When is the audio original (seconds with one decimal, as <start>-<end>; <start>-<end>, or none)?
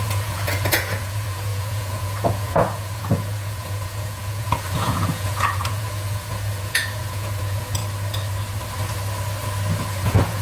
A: 7.8-9.9